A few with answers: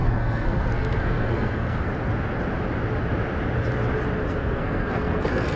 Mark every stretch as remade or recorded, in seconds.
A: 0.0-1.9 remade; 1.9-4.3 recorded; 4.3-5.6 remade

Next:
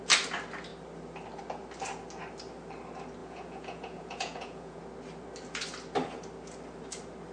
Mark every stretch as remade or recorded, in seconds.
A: 0.0-3.2 recorded; 3.2-4.8 remade; 4.8-7.3 recorded

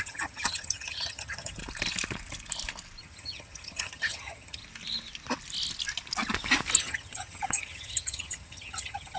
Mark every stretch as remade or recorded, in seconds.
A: 0.0-1.6 remade; 1.6-3.0 recorded; 3.0-4.6 remade; 4.6-6.8 recorded; 6.8-9.2 remade

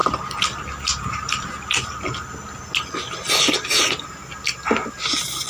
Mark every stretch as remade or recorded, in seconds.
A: 0.0-5.5 recorded

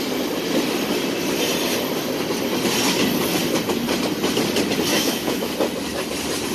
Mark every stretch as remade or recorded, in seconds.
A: 0.0-4.9 recorded; 4.9-5.5 remade; 5.5-6.5 recorded

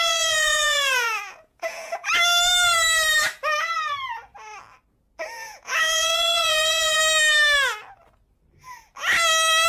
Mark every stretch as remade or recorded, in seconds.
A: 0.0-2.1 remade; 2.1-5.4 recorded; 5.4-7.0 remade; 7.0-9.7 recorded

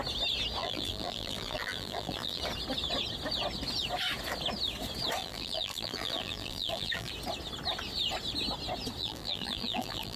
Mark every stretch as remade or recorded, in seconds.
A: 0.0-0.6 recorded; 0.6-2.4 remade; 2.4-5.2 recorded; 5.2-7.1 remade; 7.1-9.0 recorded; 9.0-10.2 remade

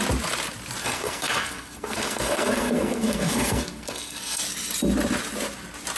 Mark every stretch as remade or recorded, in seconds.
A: 0.0-0.8 recorded; 0.8-4.4 remade; 4.4-6.0 recorded